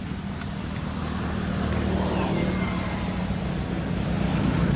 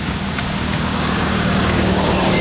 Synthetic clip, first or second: second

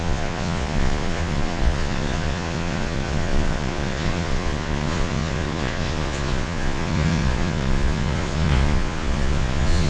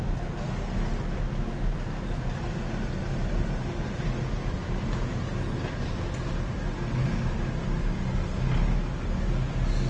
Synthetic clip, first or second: first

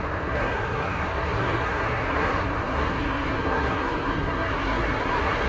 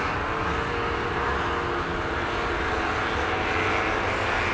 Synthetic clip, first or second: first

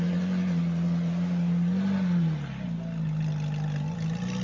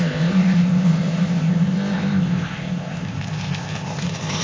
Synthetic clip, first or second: second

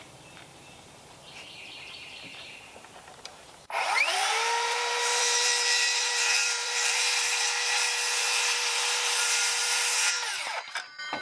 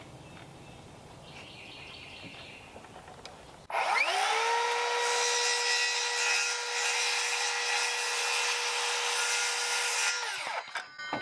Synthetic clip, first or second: first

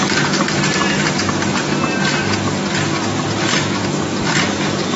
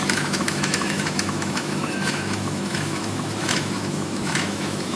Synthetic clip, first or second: second